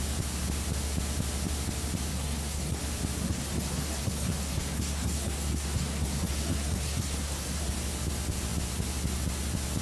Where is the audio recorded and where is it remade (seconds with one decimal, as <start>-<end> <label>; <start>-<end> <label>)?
0.0-2.1 recorded; 2.1-2.8 remade; 2.8-3.2 recorded; 3.2-7.7 remade; 7.7-9.8 recorded